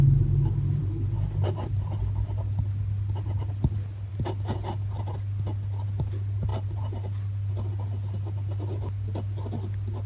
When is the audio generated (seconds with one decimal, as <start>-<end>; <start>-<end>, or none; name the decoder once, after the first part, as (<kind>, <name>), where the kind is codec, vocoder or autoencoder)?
none

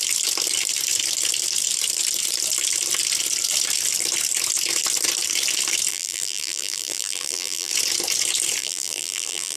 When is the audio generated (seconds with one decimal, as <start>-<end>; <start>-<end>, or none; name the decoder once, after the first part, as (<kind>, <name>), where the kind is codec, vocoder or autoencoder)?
5.9-7.7 (vocoder, BigVGAN v2); 8.6-9.6

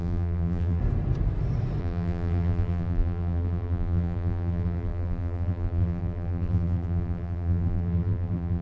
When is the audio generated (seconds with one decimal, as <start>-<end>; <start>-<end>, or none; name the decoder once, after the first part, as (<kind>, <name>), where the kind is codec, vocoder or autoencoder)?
0.0-0.8 (vocoder, BigVGAN v2); 1.8-8.6

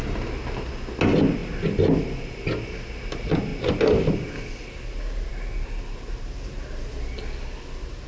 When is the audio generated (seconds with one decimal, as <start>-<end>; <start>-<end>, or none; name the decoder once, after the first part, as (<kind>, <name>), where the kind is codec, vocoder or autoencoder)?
5.3-6.9 (vocoder, BigVGAN v2)

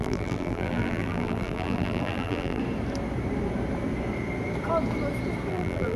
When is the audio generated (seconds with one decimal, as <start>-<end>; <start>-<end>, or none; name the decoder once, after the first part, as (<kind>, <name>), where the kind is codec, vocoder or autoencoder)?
0.0-2.6 (vocoder, BigVGAN v2); 5.5-6.0